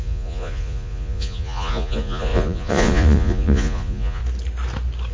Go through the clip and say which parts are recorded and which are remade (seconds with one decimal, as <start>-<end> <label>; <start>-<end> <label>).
0.0-4.2 remade; 4.2-5.1 recorded